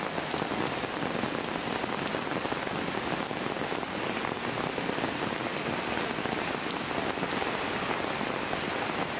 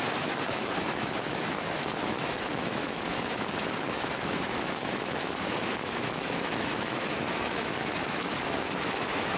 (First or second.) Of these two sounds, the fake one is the second